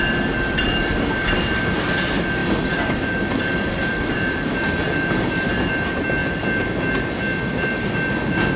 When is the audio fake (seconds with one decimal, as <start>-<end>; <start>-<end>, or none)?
2.4-5.7